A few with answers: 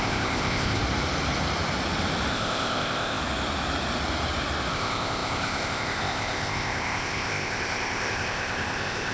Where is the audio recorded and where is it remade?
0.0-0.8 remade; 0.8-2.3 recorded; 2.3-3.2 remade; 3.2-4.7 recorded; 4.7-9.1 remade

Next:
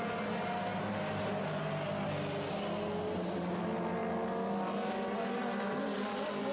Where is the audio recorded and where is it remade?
0.0-6.5 recorded

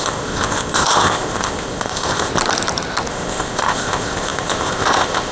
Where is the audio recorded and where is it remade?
0.0-2.3 remade; 2.3-3.1 recorded; 3.1-5.3 remade

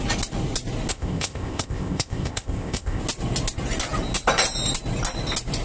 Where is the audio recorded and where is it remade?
0.0-0.9 recorded; 0.9-3.0 remade; 3.0-5.6 recorded

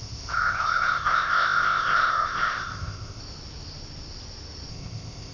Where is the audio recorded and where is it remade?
0.0-3.2 remade; 3.2-4.7 recorded; 4.7-5.3 remade

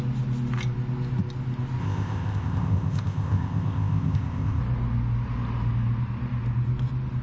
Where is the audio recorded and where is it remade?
0.0-1.8 recorded; 1.8-4.6 remade; 4.6-7.2 recorded

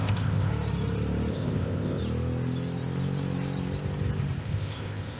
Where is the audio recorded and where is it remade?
0.0-0.5 remade; 0.5-1.3 recorded; 1.3-2.0 remade; 2.0-4.4 recorded; 4.4-5.2 remade

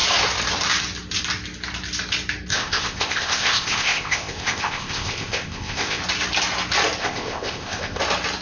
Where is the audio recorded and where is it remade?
0.0-2.5 recorded; 2.5-6.0 remade; 6.0-7.0 recorded; 7.0-8.0 remade; 8.0-8.4 recorded